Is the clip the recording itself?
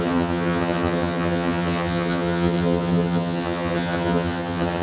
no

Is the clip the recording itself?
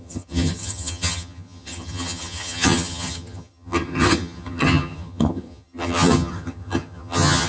no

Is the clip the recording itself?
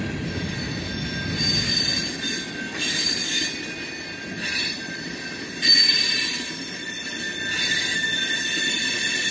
yes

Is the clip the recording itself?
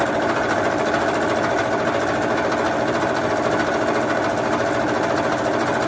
yes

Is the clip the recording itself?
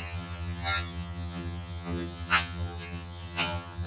no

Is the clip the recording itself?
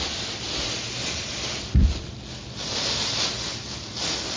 yes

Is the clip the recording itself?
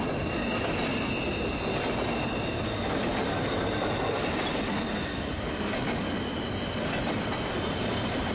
yes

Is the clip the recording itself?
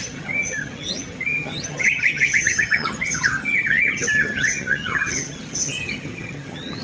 no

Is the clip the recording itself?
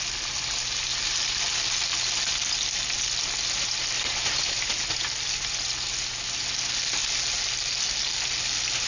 yes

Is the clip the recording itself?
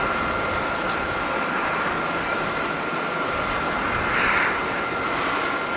yes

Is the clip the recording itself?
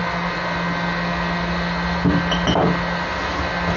yes